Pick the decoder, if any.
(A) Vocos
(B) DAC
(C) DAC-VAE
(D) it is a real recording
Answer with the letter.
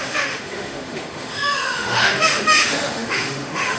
C